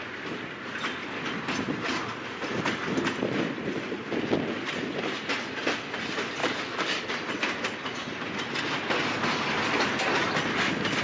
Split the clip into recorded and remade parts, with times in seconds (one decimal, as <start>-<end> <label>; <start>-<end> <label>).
0.0-6.4 recorded; 6.4-7.1 remade; 7.1-11.0 recorded